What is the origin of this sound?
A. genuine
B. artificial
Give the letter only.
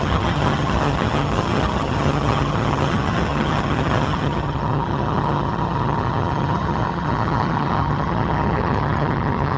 B